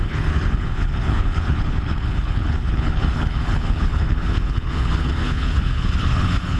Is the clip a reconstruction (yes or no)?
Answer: yes